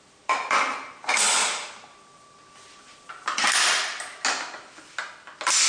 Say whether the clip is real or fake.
real